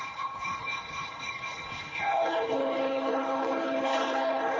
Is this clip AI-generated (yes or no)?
yes